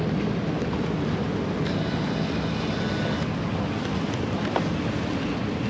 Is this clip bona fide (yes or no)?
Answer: yes